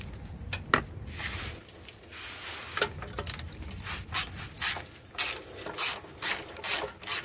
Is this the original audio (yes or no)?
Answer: yes